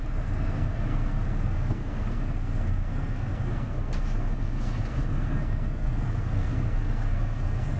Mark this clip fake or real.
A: fake